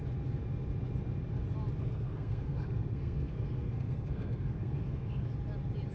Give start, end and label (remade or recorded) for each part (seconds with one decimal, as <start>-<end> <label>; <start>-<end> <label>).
0.0-1.8 recorded; 1.8-5.3 remade; 5.3-5.9 recorded